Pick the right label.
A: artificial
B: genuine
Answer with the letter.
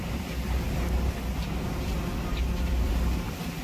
B